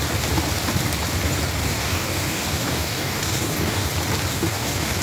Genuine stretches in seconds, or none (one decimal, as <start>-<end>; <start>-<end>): 0.0-1.6; 3.9-4.3